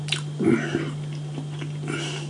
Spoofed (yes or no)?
no